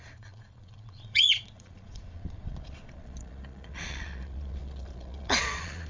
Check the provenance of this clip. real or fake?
fake